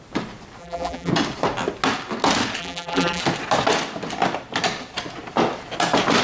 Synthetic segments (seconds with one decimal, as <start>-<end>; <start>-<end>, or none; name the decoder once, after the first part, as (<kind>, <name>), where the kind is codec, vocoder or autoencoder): 0.6-1.1 (vocoder, BigVGAN v2); 2.6-3.2